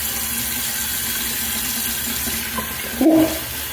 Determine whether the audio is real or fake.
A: real